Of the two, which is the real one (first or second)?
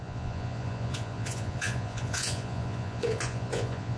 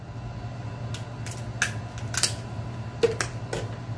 second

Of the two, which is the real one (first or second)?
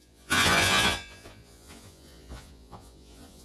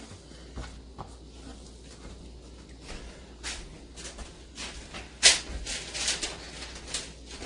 second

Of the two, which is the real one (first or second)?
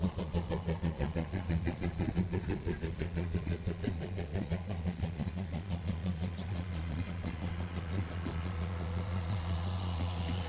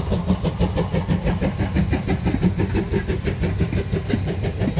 second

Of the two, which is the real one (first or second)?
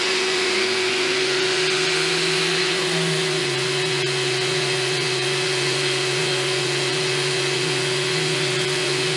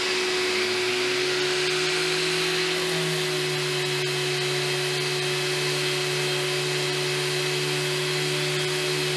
second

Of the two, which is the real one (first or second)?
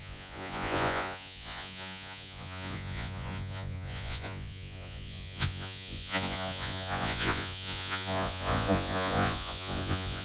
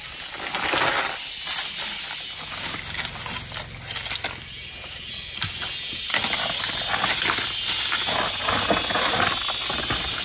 second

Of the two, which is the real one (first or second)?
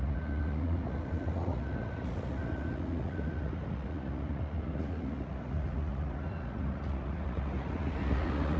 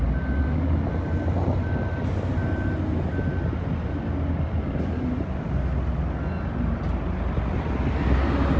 second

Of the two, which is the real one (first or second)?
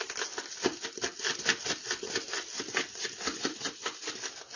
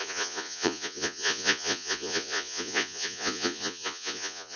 first